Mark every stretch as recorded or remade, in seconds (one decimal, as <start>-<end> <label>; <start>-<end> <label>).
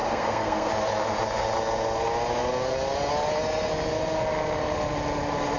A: 0.0-0.7 remade; 0.7-5.6 recorded